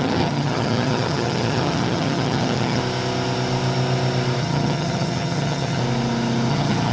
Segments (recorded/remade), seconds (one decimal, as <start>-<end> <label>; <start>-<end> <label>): 0.0-2.8 remade; 2.8-4.4 recorded; 4.4-5.8 remade; 5.8-6.5 recorded; 6.5-6.9 remade

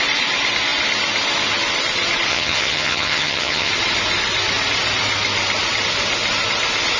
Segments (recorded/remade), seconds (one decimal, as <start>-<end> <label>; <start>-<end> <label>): 0.0-2.3 recorded; 2.3-3.7 remade; 3.7-7.0 recorded